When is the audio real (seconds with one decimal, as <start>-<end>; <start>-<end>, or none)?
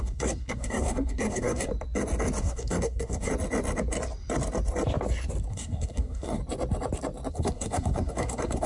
1.7-2.4; 3.3-5.5; 6.4-7.3